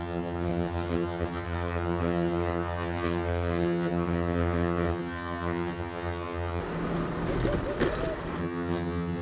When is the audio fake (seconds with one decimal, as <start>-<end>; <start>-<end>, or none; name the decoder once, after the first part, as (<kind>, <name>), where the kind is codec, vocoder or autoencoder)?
0.0-6.6 (vocoder, HiFi-GAN); 8.4-9.2